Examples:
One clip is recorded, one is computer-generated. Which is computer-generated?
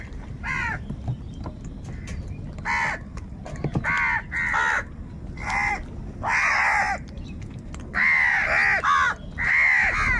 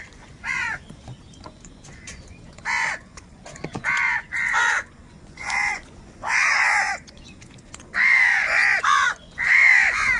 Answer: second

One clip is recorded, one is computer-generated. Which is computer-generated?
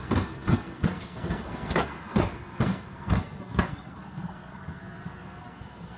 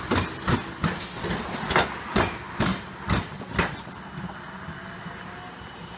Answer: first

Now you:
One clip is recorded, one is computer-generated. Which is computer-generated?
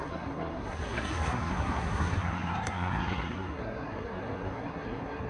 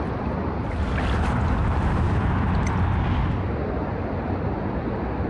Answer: first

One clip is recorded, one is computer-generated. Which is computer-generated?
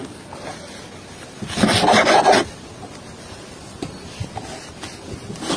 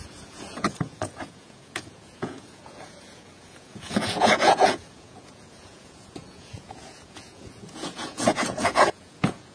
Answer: second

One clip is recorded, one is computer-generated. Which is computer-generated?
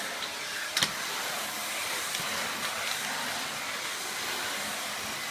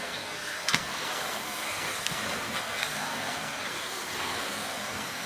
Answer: second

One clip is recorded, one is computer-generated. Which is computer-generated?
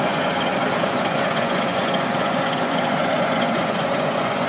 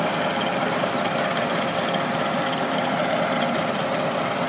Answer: first